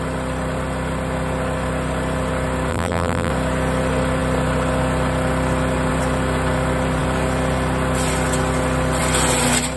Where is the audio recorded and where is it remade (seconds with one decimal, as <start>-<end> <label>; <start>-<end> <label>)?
0.0-2.7 recorded; 2.7-3.3 remade; 3.3-9.8 recorded